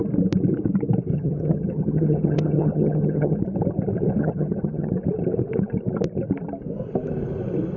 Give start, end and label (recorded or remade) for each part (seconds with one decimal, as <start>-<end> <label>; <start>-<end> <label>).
0.0-1.1 recorded; 1.1-3.4 remade; 3.4-4.2 recorded; 4.2-4.9 remade; 4.9-7.8 recorded